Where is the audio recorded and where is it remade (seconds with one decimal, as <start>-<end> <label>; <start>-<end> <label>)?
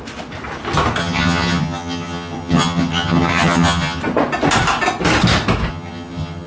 0.0-1.0 recorded; 1.0-4.0 remade; 4.0-5.7 recorded; 5.7-6.5 remade